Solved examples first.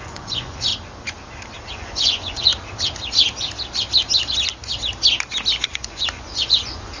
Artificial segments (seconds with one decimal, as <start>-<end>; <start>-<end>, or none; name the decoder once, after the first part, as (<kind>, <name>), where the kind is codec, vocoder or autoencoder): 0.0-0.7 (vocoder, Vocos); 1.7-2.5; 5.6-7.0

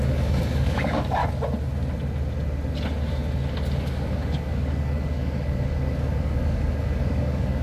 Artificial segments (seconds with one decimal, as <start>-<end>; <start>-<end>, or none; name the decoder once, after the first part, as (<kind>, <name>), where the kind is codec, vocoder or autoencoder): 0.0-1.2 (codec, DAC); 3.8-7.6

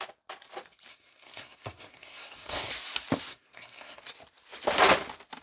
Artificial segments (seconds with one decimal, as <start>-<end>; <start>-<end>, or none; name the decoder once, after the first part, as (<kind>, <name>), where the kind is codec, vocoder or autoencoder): 0.9-2.7 (codec, SNAC); 3.3-4.0

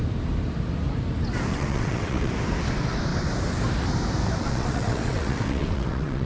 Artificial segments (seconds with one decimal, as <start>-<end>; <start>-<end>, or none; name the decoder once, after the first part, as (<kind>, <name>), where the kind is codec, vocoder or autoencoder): 1.5-2.3 (vocoder, WaveNeXt); 4.4-6.3

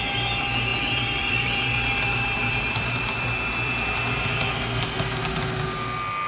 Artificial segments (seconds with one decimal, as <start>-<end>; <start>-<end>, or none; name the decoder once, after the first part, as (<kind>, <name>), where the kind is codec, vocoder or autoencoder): 0.7-4.5 (vocoder, BigVGAN v2)

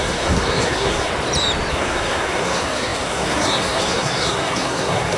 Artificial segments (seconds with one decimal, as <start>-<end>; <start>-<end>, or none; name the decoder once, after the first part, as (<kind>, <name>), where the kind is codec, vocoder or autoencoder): 0.0-1.1 (codec, SNAC); 1.7-5.2